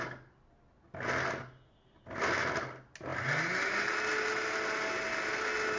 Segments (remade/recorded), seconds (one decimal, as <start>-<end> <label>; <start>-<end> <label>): 0.0-5.8 recorded